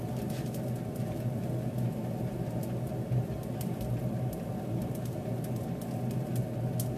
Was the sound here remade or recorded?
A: recorded